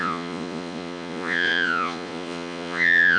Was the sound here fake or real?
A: fake